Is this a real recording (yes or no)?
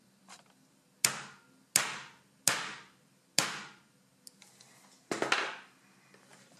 yes